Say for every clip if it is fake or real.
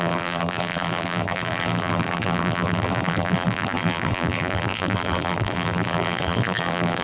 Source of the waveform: fake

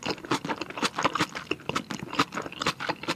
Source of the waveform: real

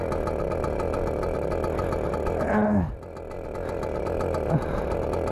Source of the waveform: real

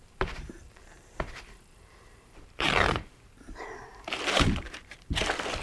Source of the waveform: fake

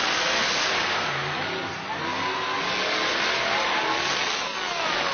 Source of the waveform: real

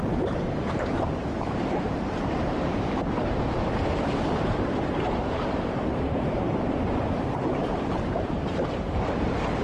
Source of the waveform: fake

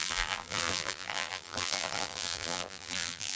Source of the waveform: fake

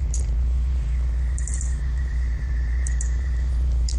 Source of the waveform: fake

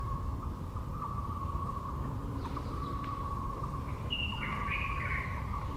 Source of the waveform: real